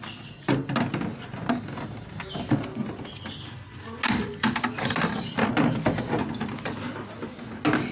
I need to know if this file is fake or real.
real